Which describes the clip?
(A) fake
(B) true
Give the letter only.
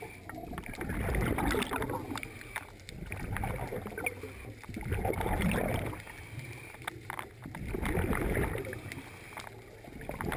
B